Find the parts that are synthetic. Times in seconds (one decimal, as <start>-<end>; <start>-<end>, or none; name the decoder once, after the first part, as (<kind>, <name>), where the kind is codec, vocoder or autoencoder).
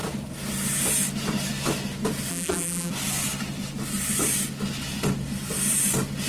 2.3-2.9 (vocoder, BigVGAN v2)